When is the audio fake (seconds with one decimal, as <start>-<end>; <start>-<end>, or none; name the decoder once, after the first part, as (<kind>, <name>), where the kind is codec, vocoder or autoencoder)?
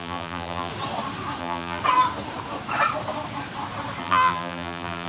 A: 0.0-0.7 (vocoder, BigVGAN v2); 1.4-1.8; 4.0-5.1